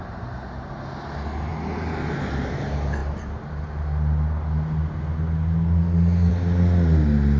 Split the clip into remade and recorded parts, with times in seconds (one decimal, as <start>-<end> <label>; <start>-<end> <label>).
0.0-7.4 recorded